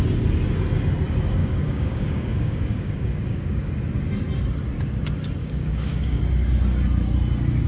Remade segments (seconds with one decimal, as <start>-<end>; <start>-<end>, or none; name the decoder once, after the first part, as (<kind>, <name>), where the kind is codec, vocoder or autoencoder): 1.4-3.7 (codec, DAC); 5.4-6.2

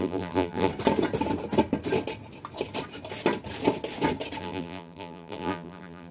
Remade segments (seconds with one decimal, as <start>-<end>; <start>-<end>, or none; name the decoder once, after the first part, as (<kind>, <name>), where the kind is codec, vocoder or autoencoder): 0.0-0.7 (vocoder, BigVGAN v2); 4.4-6.1